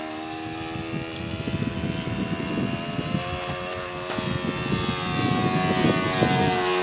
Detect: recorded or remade recorded